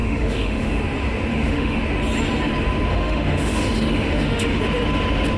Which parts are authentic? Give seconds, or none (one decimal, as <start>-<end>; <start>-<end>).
0.8-1.3; 1.8-2.9; 4.6-5.4